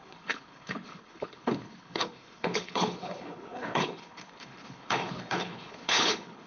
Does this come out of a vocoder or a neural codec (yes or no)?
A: yes